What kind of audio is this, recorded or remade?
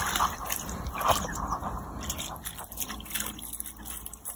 recorded